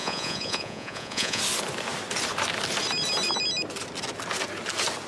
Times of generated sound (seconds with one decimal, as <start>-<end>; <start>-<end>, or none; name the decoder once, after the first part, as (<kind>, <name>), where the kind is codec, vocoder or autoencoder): 0.0-1.4 (vocoder, Vocos)